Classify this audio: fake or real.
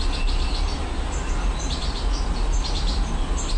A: real